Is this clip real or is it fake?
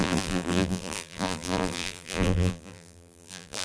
fake